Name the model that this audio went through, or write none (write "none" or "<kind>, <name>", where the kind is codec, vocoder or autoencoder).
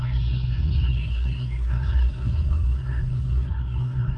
codec, SNAC